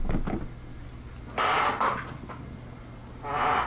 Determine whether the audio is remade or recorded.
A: recorded